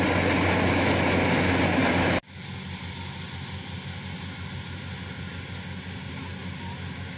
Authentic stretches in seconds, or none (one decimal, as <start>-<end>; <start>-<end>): 0.0-7.2